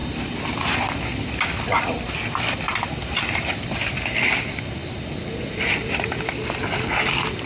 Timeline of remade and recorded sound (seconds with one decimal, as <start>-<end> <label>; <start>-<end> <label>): 0.0-7.5 recorded